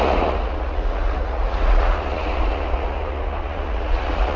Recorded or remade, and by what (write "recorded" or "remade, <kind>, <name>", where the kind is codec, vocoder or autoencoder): remade, vocoder, Vocos